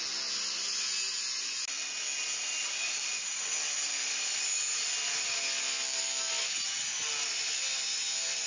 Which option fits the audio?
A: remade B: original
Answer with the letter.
B